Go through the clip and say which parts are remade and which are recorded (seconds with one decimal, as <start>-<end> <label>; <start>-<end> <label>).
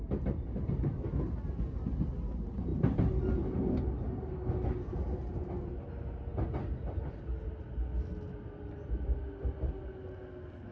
0.0-10.7 recorded